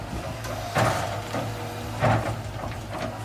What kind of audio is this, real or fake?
real